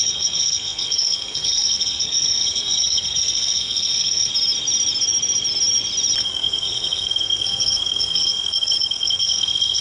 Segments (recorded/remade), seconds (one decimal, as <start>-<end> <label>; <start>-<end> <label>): 0.0-4.3 remade; 4.3-6.2 recorded; 6.2-9.8 remade